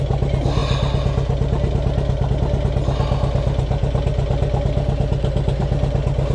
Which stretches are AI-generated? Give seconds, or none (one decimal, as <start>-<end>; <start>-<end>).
none